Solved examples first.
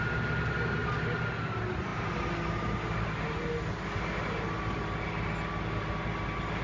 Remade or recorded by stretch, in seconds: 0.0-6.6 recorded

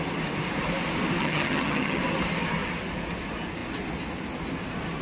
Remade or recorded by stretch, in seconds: 0.0-1.2 recorded; 1.2-2.0 remade; 2.0-5.0 recorded

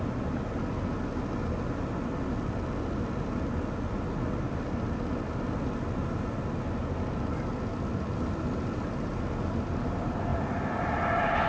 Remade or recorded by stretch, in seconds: 0.0-11.5 recorded

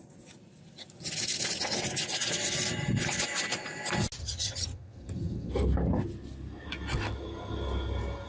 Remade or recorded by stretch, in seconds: 0.0-4.2 recorded; 4.2-5.5 remade; 5.5-8.3 recorded